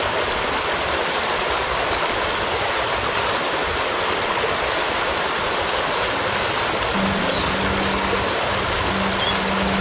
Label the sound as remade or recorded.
recorded